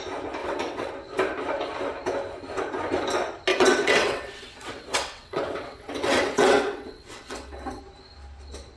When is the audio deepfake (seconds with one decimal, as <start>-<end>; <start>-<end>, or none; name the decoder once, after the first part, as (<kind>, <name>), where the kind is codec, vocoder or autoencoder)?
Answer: 0.4-0.9 (vocoder, WaveNeXt); 3.5-7.8